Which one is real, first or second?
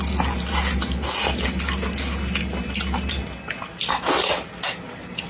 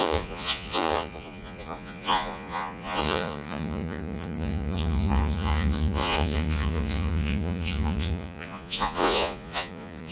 first